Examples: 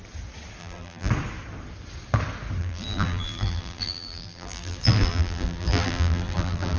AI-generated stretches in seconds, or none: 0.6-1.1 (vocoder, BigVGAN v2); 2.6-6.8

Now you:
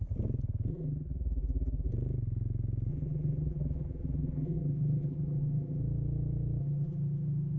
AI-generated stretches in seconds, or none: 0.7-1.9 (vocoder, BigVGAN v2); 2.9-5.8; 6.6-7.6